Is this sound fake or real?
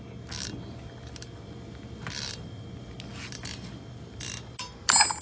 real